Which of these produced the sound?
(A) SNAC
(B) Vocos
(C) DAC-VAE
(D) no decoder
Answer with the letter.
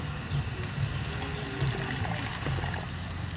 D